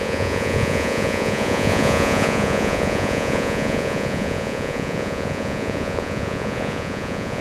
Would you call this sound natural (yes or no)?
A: no